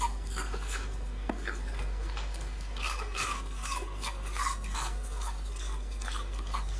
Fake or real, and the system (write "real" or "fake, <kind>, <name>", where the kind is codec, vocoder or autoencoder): fake, codec, SNAC